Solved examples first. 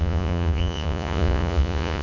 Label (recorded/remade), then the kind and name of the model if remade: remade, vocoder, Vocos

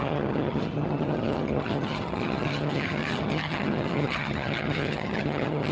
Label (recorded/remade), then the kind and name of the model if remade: remade, vocoder, HiFi-GAN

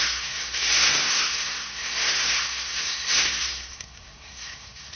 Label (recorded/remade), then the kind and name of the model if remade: remade, codec, SNAC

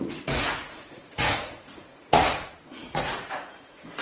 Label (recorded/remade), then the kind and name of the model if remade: remade, vocoder, Vocos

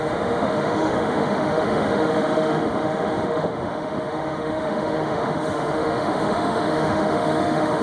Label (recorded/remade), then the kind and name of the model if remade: remade, autoencoder, DAC-VAE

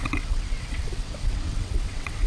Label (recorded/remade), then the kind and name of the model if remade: remade, vocoder, WaveNeXt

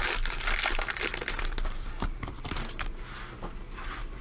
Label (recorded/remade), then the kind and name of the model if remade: recorded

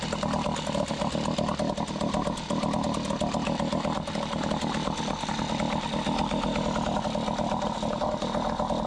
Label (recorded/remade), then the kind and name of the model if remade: recorded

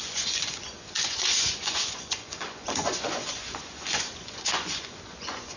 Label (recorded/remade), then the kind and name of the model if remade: remade, vocoder, Vocos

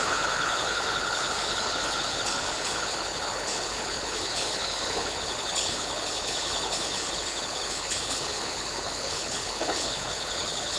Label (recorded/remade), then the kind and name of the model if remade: remade, codec, HILCodec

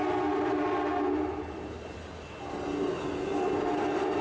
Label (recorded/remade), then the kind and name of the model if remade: recorded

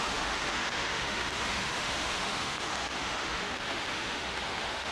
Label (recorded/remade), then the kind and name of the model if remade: remade, autoencoder, DAC-VAE